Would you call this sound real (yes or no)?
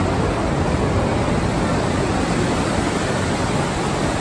yes